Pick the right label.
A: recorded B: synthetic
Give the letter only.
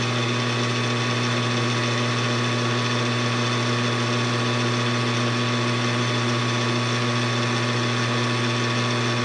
A